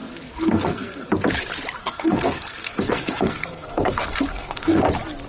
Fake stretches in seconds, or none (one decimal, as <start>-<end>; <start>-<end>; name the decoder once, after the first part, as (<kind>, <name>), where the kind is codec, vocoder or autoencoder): 0.0-1.1 (codec, SNAC); 1.8-4.8

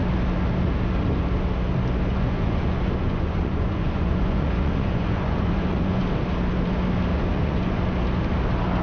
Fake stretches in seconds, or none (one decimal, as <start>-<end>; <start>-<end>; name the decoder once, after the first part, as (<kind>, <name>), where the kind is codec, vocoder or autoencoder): 2.1-6.0 (vocoder, Vocos); 7.1-7.8

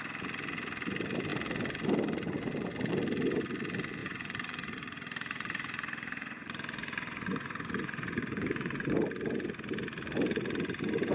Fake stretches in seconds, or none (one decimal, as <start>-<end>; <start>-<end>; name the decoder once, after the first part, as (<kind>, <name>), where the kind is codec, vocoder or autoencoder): 4.0-8.9 (vocoder, Vocos)

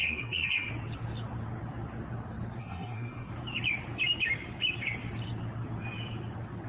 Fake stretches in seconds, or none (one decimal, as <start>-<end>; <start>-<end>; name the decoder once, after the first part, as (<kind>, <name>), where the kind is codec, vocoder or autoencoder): 0.0-0.7 (codec, SNAC); 2.6-3.3

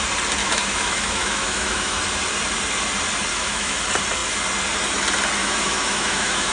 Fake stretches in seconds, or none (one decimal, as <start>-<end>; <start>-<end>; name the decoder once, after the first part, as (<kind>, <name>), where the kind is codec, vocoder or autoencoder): 0.4-2.0 (autoencoder, DAC-VAE); 3.3-3.8; 5.4-6.5

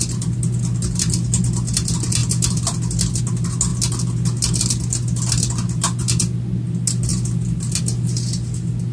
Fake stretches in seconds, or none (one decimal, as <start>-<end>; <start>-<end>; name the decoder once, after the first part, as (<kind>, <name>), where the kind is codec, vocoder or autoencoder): none